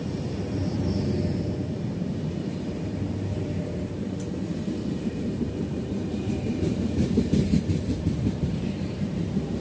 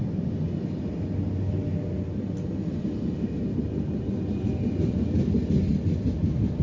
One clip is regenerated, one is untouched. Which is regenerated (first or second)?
first